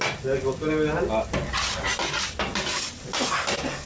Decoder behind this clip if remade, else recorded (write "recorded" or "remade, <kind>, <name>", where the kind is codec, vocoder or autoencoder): recorded